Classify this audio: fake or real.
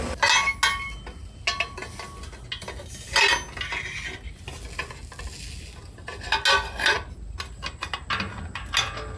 real